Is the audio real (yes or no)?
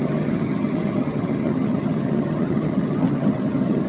no